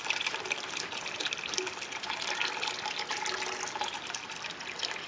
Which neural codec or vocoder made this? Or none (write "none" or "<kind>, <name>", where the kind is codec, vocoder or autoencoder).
none